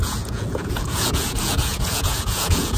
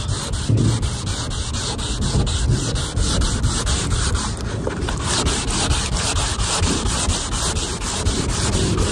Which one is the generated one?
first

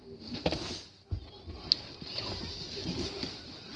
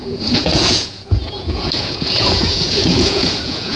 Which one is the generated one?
second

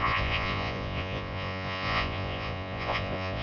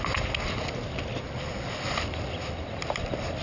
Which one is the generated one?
first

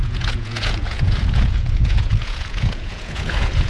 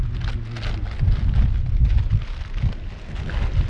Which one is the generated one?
first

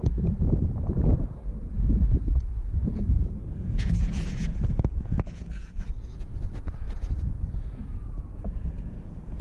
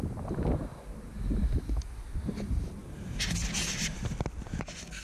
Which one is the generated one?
first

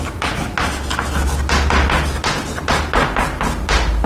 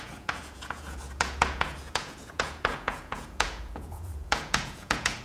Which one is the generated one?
second